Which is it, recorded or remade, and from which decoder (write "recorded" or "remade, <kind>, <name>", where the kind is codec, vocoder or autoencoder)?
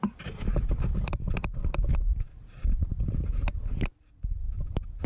remade, vocoder, BigVGAN v2